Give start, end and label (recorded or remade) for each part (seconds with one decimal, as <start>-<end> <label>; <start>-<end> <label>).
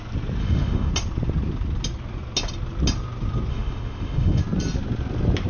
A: 0.0-0.4 recorded; 0.4-0.9 remade; 0.9-3.5 recorded; 3.5-4.4 remade; 4.4-5.5 recorded